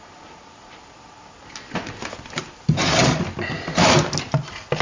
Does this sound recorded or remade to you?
recorded